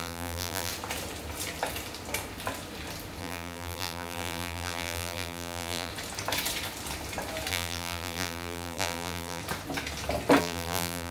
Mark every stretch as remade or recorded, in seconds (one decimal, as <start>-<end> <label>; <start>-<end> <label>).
0.0-0.7 remade; 0.7-3.2 recorded; 3.2-5.9 remade; 5.9-7.5 recorded; 7.5-9.4 remade; 9.4-10.4 recorded; 10.4-11.1 remade